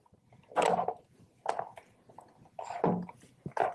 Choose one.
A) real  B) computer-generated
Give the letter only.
A